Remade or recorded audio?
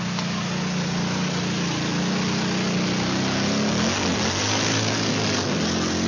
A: recorded